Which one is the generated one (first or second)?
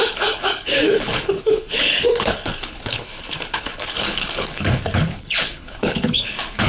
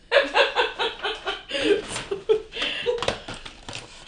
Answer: first